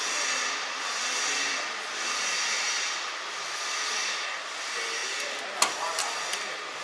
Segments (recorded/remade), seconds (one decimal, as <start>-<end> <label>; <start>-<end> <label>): 0.0-6.8 recorded